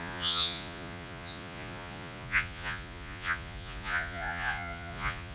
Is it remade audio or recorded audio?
remade